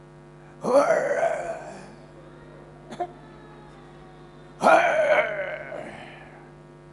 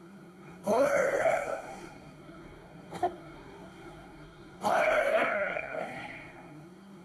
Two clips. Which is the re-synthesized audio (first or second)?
second